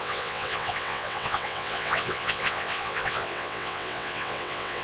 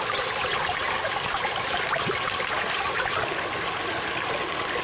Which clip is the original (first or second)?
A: second